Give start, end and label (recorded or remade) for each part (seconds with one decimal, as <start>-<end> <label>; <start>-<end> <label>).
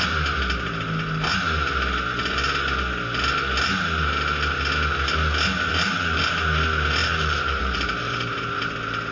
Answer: 0.0-5.7 recorded; 5.7-6.2 remade; 6.2-7.0 recorded; 7.0-8.6 remade; 8.6-9.1 recorded